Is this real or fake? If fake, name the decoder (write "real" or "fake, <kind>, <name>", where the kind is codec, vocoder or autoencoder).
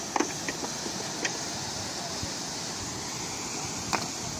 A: real